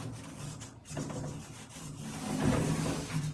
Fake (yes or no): no